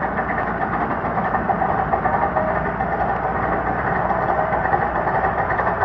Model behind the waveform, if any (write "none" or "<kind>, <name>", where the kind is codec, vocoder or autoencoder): none